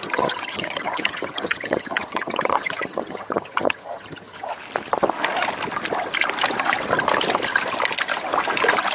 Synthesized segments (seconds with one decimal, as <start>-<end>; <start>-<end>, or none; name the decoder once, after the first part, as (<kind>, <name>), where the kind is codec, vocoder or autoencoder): 0.0-4.5 (vocoder, HiFi-GAN)